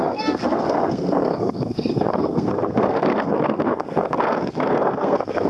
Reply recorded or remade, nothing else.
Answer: remade